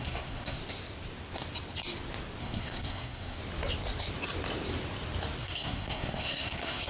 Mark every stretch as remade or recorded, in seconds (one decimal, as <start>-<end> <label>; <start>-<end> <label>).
0.0-0.6 remade; 0.6-2.4 recorded; 2.4-3.4 remade; 3.4-5.4 recorded; 5.4-6.9 remade